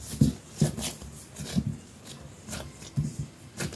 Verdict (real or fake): real